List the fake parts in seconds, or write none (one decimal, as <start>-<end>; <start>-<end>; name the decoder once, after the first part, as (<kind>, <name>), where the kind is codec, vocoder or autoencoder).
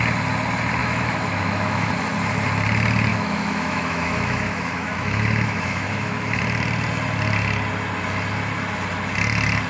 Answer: 0.8-1.9 (autoencoder, DAC-VAE); 3.1-6.4